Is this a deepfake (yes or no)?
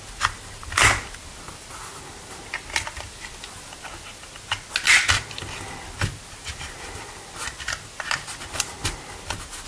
no